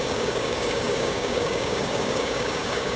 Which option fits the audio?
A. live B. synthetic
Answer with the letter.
B